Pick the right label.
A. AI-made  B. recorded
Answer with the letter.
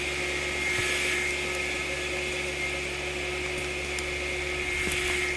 B